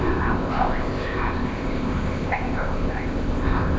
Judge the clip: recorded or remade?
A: remade